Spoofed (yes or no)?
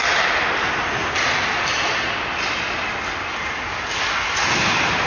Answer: no